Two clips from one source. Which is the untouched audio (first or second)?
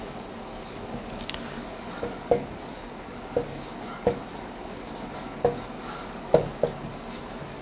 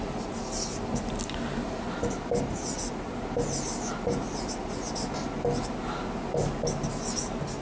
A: second